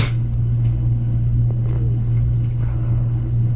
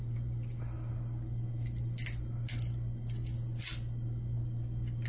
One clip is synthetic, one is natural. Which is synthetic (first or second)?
first